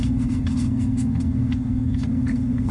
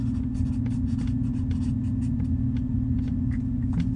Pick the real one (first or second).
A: second